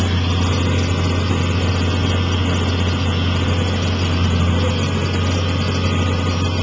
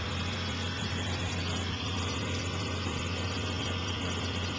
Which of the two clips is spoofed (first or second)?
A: second